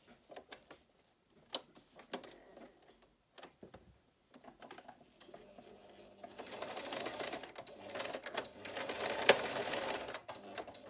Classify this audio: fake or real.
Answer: real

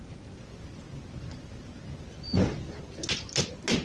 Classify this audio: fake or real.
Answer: real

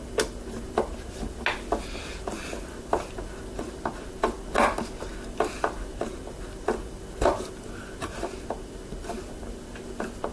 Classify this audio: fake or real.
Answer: real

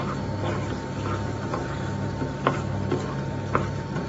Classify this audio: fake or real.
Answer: real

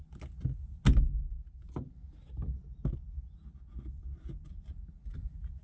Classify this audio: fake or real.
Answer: real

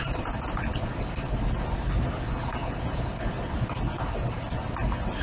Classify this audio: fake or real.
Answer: real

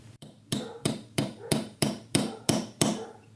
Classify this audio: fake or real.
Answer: fake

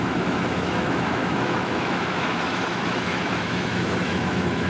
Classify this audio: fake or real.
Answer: fake